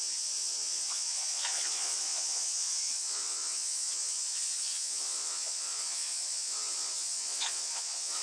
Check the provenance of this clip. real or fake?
fake